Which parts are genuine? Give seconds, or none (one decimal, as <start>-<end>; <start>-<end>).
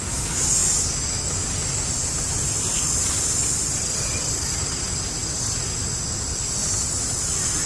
0.0-7.7